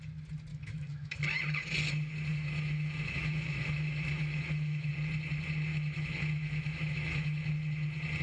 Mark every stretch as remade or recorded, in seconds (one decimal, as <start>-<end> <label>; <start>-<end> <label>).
0.0-0.5 recorded; 0.5-1.2 remade; 1.2-2.3 recorded; 2.3-4.9 remade; 4.9-5.7 recorded; 5.7-7.5 remade; 7.5-8.2 recorded